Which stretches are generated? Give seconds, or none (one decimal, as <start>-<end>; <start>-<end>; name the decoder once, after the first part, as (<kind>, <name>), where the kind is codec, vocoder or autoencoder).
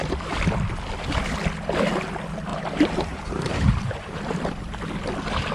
2.5-4.2 (vocoder, BigVGAN v2)